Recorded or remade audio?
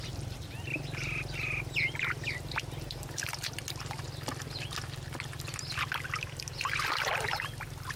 recorded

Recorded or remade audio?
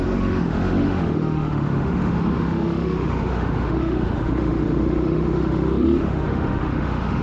remade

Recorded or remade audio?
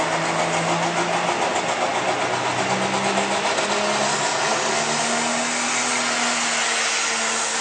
recorded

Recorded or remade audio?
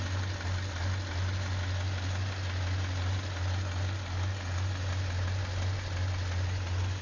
recorded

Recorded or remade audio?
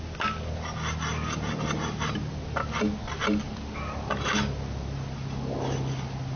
recorded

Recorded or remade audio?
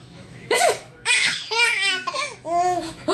remade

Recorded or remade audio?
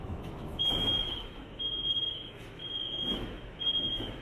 remade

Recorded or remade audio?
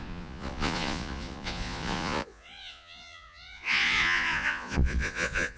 remade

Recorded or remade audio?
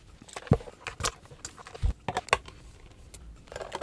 recorded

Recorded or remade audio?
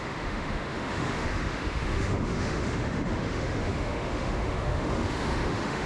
remade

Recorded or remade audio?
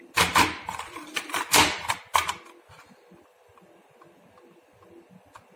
remade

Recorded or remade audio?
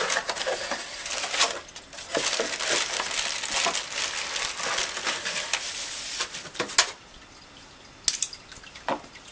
recorded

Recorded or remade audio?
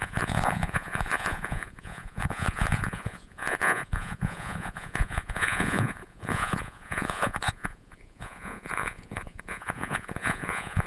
remade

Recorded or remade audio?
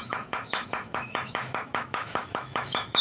remade